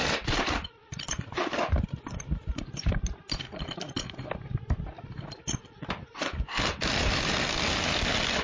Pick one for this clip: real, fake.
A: real